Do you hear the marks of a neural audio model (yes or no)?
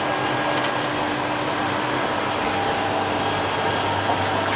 no